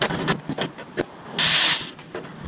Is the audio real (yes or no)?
yes